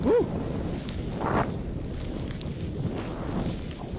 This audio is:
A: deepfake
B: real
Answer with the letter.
B